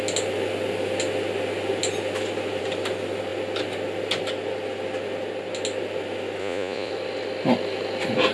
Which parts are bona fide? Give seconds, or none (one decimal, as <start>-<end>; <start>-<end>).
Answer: 0.0-6.4; 6.9-8.3

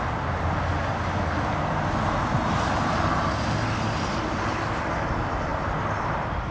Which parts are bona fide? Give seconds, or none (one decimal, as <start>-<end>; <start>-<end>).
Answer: 0.0-6.5

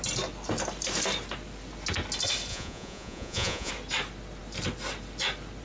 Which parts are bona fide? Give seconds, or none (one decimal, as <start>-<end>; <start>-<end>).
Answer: 0.0-2.5; 3.7-5.6

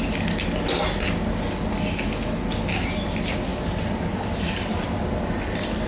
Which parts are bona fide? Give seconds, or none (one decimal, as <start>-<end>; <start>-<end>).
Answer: 0.0-5.9

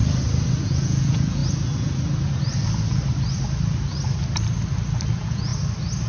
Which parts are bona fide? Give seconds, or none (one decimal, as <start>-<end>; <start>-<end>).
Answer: 0.0-0.6; 1.4-5.1; 5.5-6.1

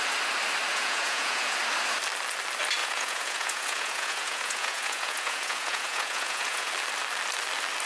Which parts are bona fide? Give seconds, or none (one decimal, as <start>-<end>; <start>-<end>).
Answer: 0.0-0.7; 1.6-2.8; 6.7-7.9

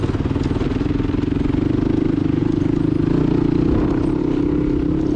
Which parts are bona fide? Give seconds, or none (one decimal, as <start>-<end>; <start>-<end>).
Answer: 0.0-5.2